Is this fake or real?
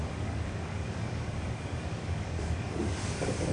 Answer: fake